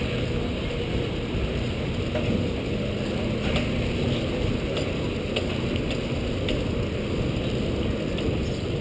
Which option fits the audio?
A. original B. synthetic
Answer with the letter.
A